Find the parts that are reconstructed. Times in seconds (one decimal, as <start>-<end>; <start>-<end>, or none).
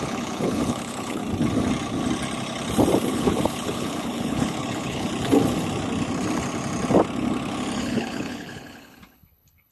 0.0-1.2; 3.1-5.1; 7.8-9.7